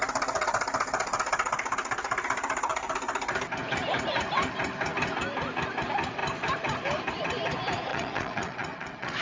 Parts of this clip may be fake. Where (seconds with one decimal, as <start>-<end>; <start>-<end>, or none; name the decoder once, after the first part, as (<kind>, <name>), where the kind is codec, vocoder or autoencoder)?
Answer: 7.9-9.2 (vocoder, WaveNeXt)